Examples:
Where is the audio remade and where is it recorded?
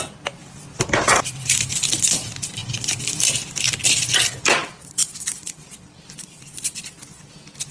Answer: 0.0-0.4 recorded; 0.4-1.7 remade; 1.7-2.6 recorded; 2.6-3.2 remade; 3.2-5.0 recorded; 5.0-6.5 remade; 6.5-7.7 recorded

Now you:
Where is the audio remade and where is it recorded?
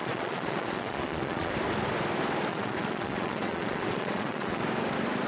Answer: 0.0-1.5 remade; 1.5-2.5 recorded; 2.5-4.6 remade; 4.6-5.3 recorded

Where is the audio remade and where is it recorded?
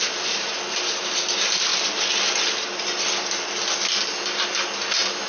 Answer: 0.0-5.3 recorded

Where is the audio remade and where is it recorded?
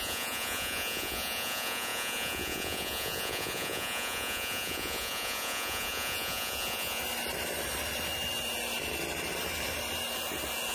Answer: 0.0-7.0 remade; 7.0-10.7 recorded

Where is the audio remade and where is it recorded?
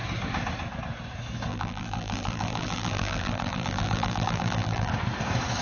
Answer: 0.0-1.5 recorded; 1.5-4.9 remade; 4.9-5.6 recorded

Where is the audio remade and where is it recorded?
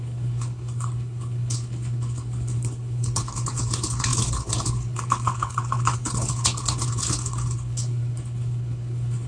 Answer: 0.0-9.3 remade